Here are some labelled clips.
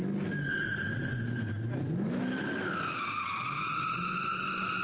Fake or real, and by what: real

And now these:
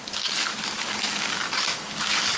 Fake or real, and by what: fake, codec, DAC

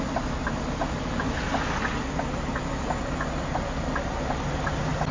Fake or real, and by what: real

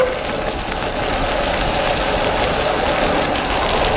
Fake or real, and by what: real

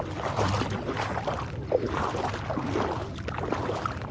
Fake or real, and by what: real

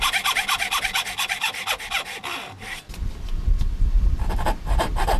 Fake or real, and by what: real